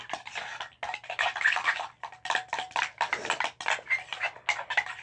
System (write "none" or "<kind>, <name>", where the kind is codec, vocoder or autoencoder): none